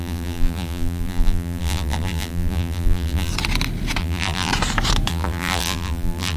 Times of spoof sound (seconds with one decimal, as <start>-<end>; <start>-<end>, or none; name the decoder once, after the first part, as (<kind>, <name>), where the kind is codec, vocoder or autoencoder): 0.0-3.3 (vocoder, BigVGAN v2); 4.0-4.5; 5.1-6.4